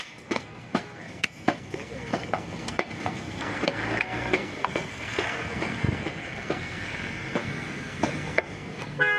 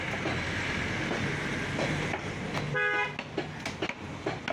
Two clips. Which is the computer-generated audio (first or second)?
first